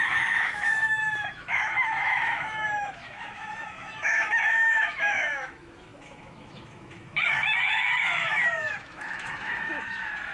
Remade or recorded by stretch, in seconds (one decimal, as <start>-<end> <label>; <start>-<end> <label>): 0.0-10.3 remade